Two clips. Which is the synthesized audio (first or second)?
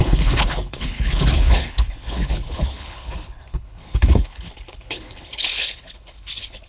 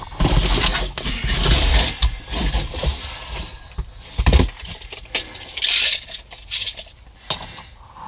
first